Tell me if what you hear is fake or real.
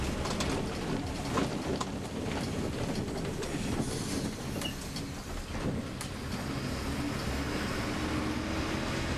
real